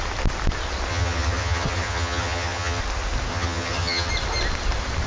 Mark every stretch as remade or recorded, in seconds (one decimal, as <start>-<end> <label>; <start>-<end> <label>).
0.0-0.9 recorded; 0.9-2.8 remade; 2.8-3.3 recorded; 3.3-4.1 remade; 4.1-5.1 recorded